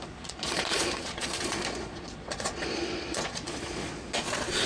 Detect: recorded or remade remade